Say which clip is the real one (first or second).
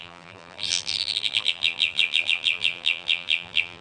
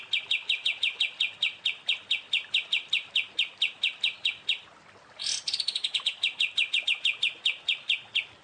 second